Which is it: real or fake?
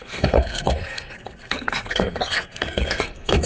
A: fake